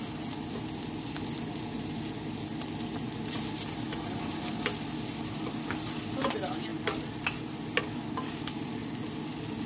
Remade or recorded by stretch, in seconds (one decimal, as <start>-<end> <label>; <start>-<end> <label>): 0.0-9.7 recorded